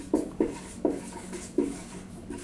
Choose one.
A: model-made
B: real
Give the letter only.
A